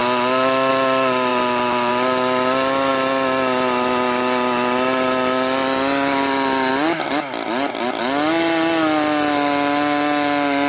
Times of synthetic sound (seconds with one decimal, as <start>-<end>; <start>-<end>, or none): none